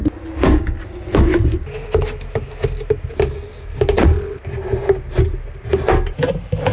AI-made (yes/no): no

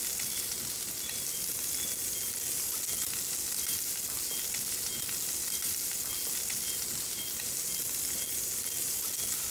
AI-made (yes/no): no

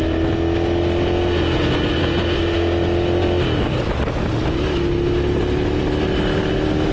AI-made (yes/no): no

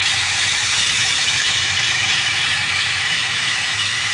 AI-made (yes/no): yes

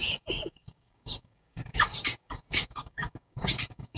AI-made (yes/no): yes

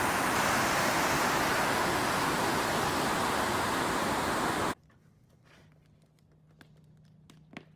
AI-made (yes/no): no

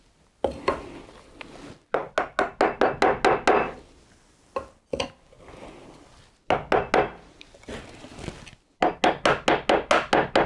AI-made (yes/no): no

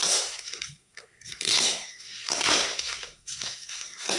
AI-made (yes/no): yes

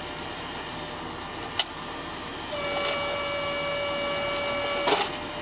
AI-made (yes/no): no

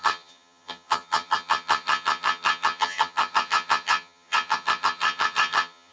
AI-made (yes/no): yes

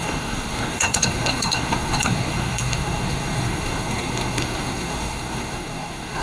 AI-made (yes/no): yes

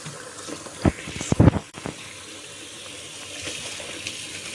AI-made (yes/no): no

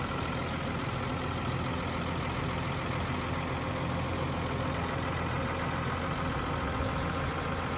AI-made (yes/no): no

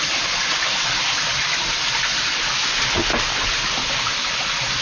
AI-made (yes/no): no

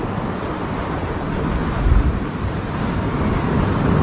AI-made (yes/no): no